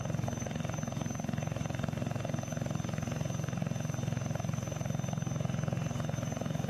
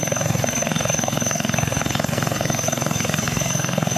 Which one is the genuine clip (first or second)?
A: first